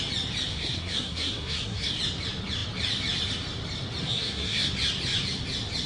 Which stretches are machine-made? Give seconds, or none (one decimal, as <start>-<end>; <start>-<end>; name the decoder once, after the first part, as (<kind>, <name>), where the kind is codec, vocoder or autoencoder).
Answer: 0.5-2.0 (codec, SNAC); 4.0-4.7